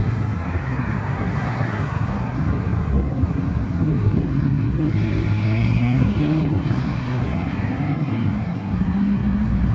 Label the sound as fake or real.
fake